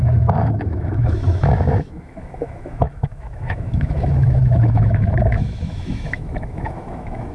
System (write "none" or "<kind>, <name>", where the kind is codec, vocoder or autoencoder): autoencoder, DAC-VAE